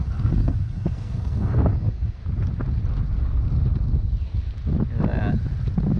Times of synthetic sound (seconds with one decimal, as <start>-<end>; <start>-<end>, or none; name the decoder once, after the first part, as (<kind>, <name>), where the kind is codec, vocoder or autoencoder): 0.0-2.2 (codec, SNAC)